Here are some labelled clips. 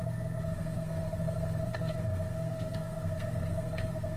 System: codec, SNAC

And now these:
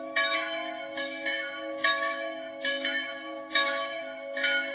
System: autoencoder, DAC-VAE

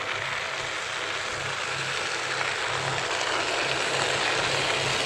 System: none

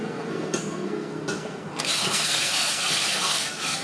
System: codec, SNAC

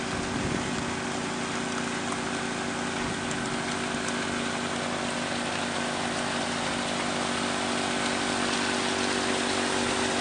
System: none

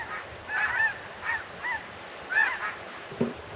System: none